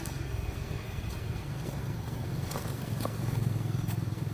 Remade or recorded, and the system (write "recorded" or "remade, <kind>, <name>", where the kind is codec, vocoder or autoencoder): remade, codec, SNAC